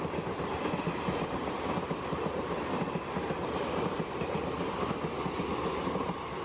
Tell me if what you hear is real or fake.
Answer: real